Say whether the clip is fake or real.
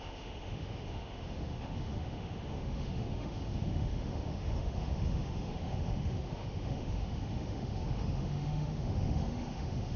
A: fake